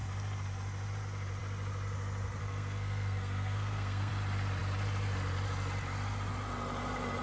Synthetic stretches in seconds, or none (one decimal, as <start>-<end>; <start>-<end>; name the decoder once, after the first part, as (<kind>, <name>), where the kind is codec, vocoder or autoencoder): 2.4-4.1 (codec, SNAC)